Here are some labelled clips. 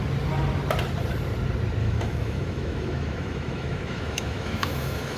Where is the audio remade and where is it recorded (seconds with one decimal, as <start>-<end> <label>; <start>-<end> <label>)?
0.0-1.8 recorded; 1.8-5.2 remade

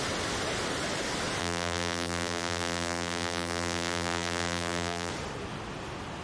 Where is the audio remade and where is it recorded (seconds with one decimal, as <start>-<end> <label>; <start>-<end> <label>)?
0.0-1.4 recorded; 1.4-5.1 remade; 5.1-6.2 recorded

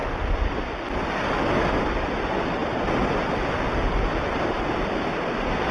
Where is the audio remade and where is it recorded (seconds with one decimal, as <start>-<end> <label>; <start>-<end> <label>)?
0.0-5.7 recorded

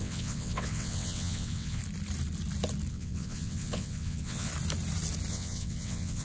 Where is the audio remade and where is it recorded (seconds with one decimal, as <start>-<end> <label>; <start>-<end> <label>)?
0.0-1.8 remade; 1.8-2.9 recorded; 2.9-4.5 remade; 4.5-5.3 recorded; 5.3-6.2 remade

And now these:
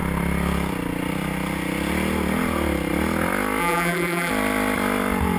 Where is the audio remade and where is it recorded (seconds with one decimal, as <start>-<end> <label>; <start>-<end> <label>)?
0.0-3.6 recorded; 3.6-4.3 remade; 4.3-5.4 recorded

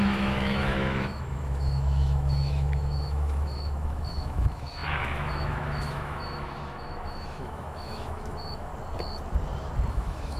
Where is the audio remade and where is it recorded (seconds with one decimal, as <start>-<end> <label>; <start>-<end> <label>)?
0.0-8.7 remade; 8.7-9.9 recorded; 9.9-10.4 remade

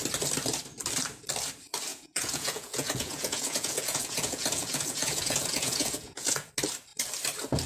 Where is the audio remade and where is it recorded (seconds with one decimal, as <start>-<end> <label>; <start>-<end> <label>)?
0.0-1.9 recorded; 1.9-6.5 remade; 6.5-7.7 recorded